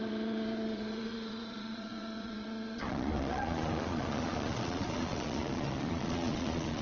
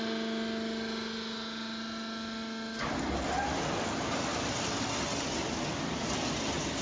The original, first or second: second